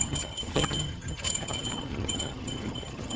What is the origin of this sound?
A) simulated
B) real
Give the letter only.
A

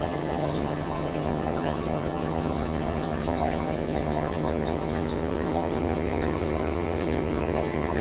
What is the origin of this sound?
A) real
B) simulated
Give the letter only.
B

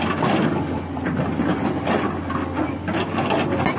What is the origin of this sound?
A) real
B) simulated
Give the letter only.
A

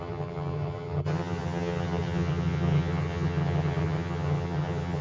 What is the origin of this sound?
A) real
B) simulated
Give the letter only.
B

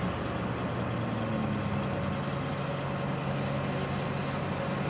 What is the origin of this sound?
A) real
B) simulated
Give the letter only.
A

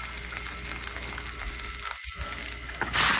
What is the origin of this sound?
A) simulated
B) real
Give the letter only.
B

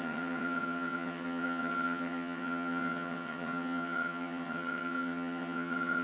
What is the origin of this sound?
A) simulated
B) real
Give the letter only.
A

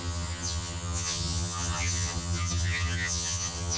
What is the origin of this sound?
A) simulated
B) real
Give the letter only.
A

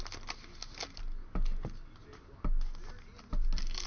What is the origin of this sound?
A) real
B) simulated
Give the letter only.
A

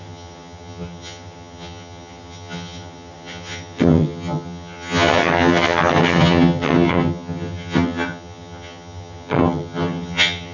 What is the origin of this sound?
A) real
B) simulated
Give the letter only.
B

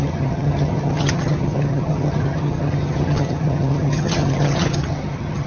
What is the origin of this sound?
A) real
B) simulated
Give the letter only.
B